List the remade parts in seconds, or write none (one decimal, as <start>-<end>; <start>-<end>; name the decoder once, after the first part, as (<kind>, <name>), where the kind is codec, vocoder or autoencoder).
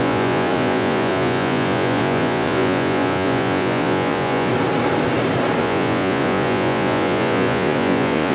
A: 0.0-4.5 (vocoder, Vocos); 5.6-8.3